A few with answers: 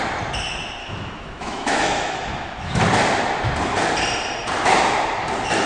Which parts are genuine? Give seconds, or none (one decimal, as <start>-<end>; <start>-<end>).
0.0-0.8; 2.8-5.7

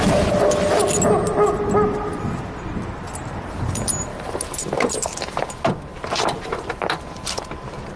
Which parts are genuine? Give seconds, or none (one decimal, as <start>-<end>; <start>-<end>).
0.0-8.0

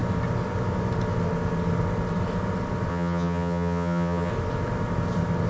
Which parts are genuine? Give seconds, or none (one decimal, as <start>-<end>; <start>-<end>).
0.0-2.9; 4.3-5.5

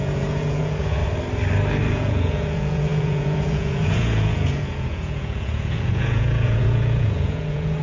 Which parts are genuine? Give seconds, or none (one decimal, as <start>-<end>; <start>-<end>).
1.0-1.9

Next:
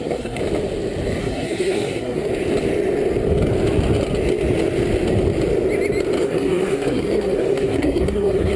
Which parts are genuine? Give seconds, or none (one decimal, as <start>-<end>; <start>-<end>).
0.4-1.2; 2.3-6.2

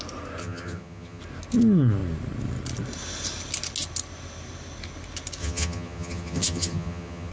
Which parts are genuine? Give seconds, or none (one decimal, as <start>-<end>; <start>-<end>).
0.0-0.4; 1.2-5.4